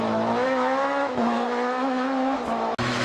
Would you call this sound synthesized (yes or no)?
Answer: yes